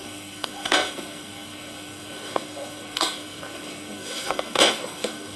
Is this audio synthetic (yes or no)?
yes